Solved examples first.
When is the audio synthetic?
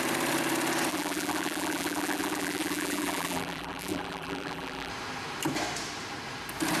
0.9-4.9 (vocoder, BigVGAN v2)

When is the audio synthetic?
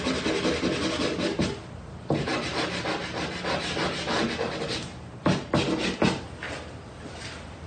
none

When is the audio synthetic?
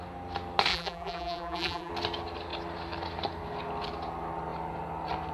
0.7-1.9 (vocoder, BigVGAN v2)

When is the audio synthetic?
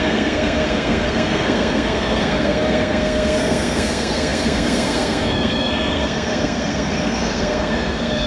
0.0-8.3 (codec, SNAC)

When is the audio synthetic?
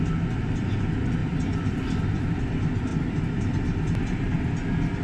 none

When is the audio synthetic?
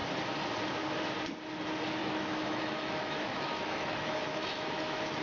2.0-5.2 (autoencoder, DAC-VAE)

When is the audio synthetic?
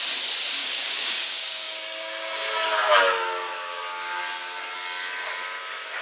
0.6-4.2 (codec, DAC)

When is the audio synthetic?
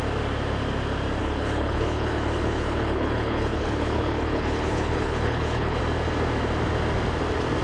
1.2-5.8 (codec, HILCodec)